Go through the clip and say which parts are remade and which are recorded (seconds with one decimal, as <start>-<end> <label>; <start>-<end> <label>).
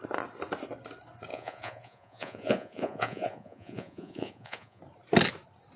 0.0-1.3 recorded; 1.3-4.8 remade; 4.8-5.8 recorded